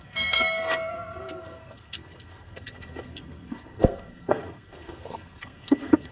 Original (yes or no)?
no